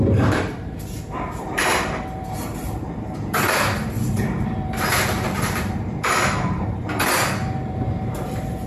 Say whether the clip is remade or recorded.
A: remade